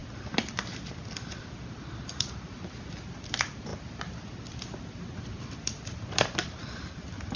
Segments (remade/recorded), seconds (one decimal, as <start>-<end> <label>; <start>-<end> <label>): 0.0-7.4 recorded